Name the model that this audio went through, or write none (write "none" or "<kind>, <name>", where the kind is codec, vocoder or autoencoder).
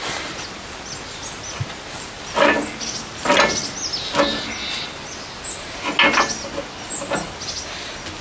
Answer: none